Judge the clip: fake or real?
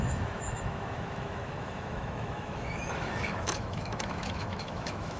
fake